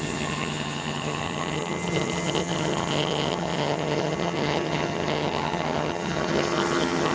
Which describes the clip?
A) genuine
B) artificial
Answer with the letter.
B